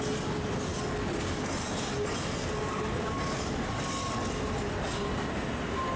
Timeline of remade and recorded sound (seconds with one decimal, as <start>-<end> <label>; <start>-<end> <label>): 0.0-6.0 recorded

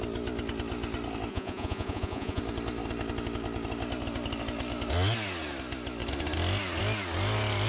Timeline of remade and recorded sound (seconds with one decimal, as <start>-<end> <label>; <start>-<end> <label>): 0.0-1.3 recorded; 1.3-2.4 remade; 2.4-7.7 recorded

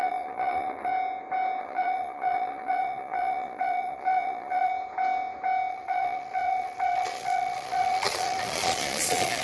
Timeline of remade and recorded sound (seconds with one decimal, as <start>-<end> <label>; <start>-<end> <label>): 0.0-0.9 remade; 0.9-1.6 recorded; 1.6-4.7 remade; 4.7-5.7 recorded; 5.7-9.4 remade

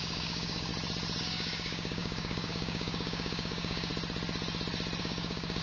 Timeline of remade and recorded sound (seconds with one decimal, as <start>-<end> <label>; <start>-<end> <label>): 0.0-0.7 remade; 0.7-1.2 recorded; 1.2-3.9 remade; 3.9-5.0 recorded; 5.0-5.6 remade

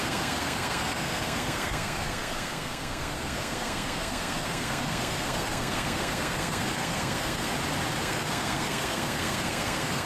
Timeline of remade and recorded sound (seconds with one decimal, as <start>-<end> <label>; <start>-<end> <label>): 0.0-7.5 remade; 7.5-8.0 recorded; 8.0-10.1 remade

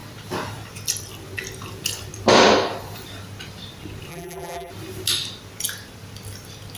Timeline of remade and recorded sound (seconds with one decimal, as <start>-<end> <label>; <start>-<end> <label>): 0.0-4.1 recorded; 4.1-4.7 remade; 4.7-6.8 recorded